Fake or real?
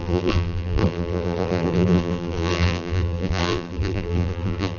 fake